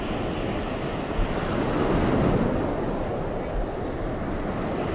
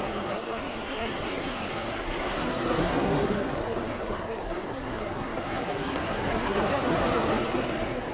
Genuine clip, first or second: first